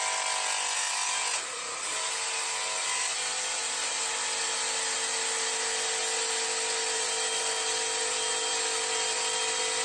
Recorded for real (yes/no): yes